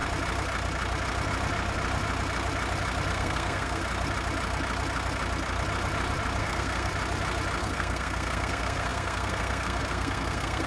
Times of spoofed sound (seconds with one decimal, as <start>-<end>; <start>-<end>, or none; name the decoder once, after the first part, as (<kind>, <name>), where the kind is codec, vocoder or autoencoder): 3.1-3.8 (codec, SNAC); 6.4-6.9; 7.6-10.7